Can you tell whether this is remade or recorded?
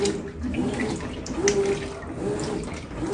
recorded